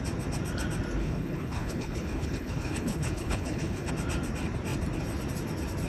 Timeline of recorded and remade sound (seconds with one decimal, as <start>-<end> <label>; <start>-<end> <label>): 0.0-1.0 recorded; 1.0-3.9 remade; 3.9-5.9 recorded